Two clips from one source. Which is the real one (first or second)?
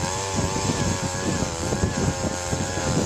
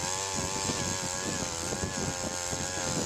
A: second